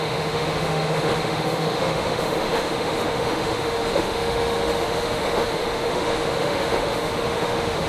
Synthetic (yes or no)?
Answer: yes